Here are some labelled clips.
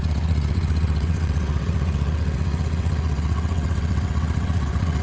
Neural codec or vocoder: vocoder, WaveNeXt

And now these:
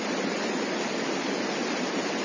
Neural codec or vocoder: none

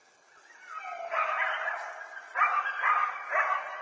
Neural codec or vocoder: none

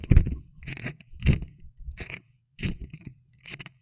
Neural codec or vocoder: vocoder, WaveNeXt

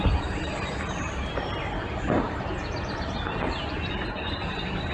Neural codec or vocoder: none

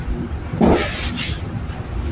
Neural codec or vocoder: none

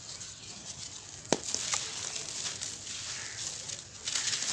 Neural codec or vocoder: none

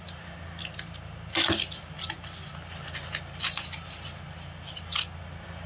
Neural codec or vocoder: none